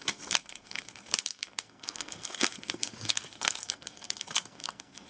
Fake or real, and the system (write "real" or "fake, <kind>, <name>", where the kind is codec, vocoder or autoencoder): fake, codec, SNAC